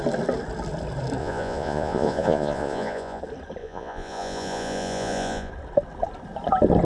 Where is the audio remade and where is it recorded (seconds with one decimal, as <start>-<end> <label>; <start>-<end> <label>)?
0.0-1.2 recorded; 1.2-3.2 remade; 3.2-3.6 recorded; 3.6-5.5 remade; 5.5-6.8 recorded